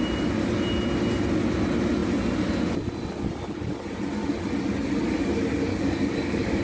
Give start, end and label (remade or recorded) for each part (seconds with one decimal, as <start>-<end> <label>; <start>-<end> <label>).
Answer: 0.0-5.7 recorded; 5.7-6.6 remade